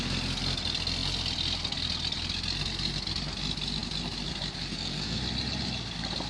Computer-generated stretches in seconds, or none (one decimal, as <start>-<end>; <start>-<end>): 4.7-5.2